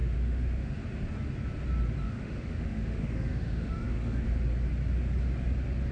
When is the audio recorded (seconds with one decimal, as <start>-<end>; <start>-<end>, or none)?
0.8-2.0; 4.2-5.9